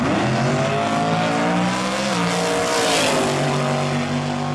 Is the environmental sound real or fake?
real